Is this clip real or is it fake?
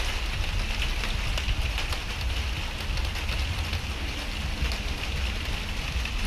real